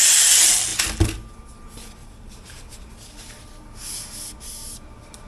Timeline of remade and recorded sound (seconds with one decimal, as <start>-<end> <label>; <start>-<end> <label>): 0.0-2.0 recorded; 2.0-3.3 remade; 3.3-5.3 recorded